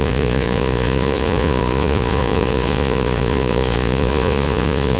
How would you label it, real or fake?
fake